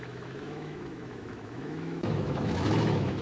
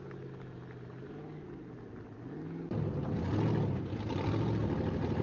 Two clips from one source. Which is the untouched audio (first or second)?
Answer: second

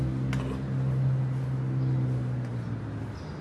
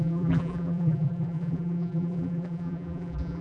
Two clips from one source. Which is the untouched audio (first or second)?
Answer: first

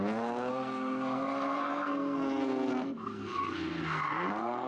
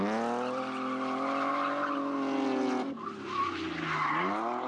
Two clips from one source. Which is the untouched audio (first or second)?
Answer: second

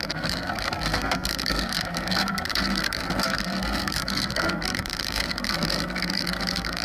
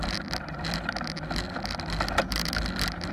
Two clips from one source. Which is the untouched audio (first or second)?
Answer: second